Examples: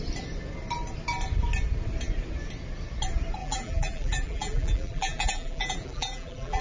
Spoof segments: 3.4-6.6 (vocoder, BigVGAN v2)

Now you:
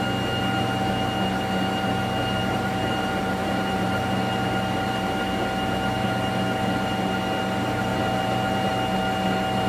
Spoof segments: 2.4-4.2 (vocoder, BigVGAN v2); 7.9-8.7